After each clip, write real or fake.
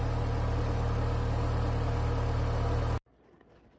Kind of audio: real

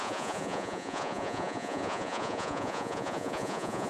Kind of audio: fake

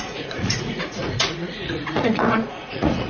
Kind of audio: fake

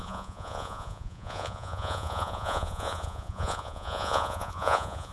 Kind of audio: fake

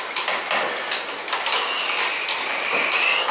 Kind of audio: real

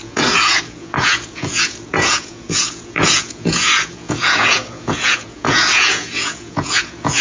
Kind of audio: fake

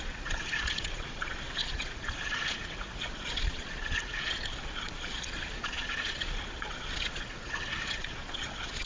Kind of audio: fake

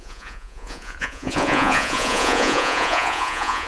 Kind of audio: fake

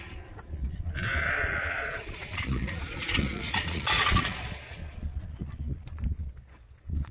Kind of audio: fake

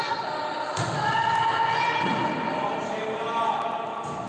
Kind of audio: real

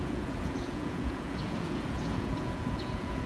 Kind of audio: fake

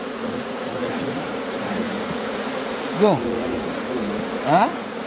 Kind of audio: fake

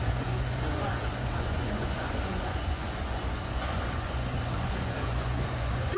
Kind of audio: fake